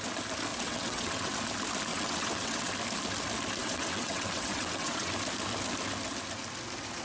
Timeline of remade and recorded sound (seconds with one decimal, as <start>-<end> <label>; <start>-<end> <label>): 0.0-0.5 recorded; 0.5-1.3 remade; 1.3-1.9 recorded; 1.9-2.7 remade; 2.7-3.6 recorded; 3.6-5.1 remade; 5.1-7.0 recorded

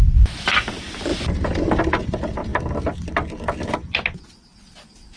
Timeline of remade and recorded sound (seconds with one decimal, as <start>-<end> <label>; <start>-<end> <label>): 0.0-5.2 recorded

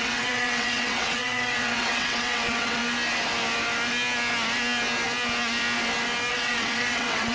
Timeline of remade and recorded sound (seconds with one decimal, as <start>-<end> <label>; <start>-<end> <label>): 0.0-2.8 remade; 2.8-6.3 recorded; 6.3-7.3 remade

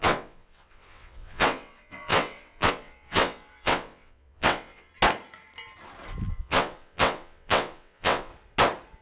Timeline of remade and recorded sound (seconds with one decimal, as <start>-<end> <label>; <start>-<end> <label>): 0.0-4.9 remade; 4.9-6.4 recorded; 6.4-8.3 remade; 8.3-9.0 recorded

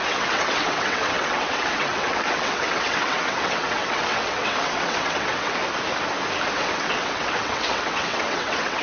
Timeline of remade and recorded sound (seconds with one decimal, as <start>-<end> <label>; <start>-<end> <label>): 0.0-5.6 remade; 5.6-6.6 recorded; 6.6-8.8 remade

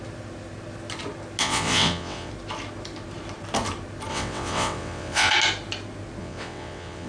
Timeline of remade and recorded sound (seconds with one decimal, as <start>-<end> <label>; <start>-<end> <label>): 0.0-1.4 recorded; 1.4-2.3 remade; 2.3-4.1 recorded; 4.1-5.3 remade; 5.3-6.2 recorded; 6.2-7.1 remade

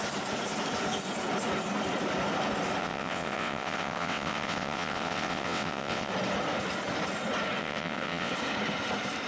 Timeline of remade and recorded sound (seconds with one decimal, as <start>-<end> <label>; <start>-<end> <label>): 0.0-2.8 recorded; 2.8-6.1 remade; 6.1-7.6 recorded; 7.6-8.3 remade; 8.3-9.3 recorded